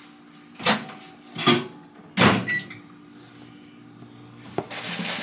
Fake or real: real